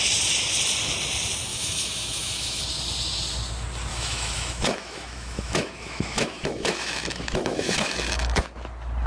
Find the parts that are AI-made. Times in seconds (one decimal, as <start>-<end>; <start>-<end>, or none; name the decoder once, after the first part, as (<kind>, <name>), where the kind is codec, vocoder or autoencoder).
1.5-2.6 (autoencoder, DAC-VAE); 3.9-8.4